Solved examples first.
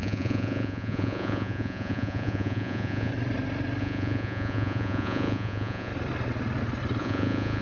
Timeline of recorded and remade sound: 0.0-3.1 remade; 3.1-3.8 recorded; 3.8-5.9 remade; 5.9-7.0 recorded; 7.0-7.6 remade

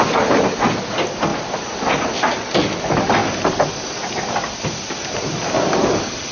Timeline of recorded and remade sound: 0.0-6.3 recorded

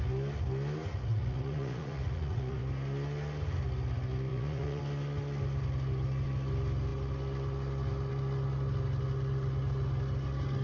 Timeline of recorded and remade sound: 0.0-1.1 recorded; 1.1-2.6 remade; 2.6-4.3 recorded; 4.3-4.8 remade; 4.8-10.6 recorded

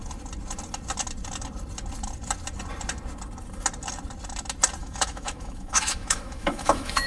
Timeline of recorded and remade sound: 0.0-4.8 recorded; 4.8-7.1 remade